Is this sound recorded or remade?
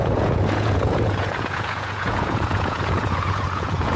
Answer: remade